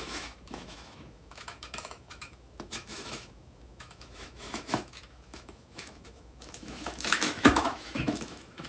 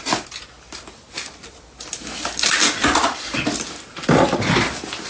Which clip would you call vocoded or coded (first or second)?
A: first